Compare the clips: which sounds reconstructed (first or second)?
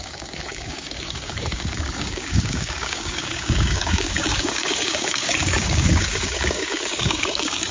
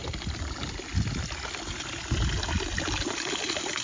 first